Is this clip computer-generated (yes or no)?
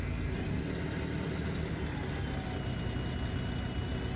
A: no